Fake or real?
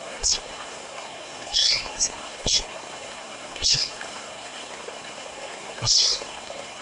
fake